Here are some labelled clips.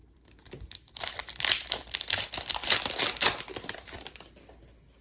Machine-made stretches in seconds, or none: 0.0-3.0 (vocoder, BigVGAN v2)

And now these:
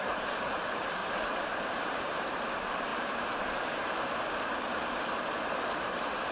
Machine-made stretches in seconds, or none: 0.0-6.3 (vocoder, BigVGAN v2)

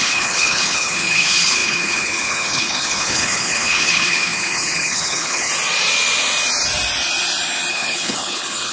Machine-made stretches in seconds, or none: 0.0-5.5 (codec, HILCodec); 7.7-8.7